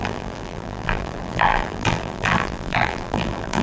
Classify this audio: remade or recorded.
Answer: remade